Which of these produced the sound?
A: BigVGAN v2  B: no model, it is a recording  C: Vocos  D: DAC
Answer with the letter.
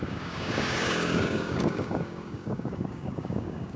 D